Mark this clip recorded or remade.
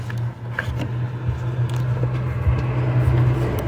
recorded